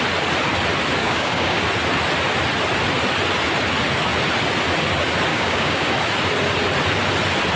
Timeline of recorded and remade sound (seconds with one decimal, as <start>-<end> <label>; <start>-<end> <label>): 0.0-1.0 recorded; 1.0-1.6 remade; 1.6-5.3 recorded; 5.3-5.9 remade; 5.9-7.6 recorded